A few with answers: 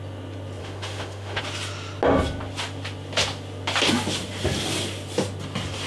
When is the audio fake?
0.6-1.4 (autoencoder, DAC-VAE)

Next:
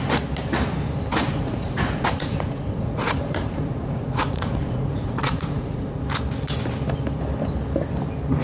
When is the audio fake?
1.1-6.0 (vocoder, Vocos)

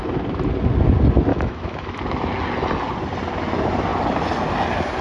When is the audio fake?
1.3-2.0 (autoencoder, DAC-VAE)

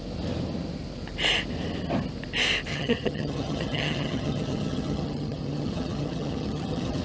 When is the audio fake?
2.7-7.0 (vocoder, HiFi-GAN)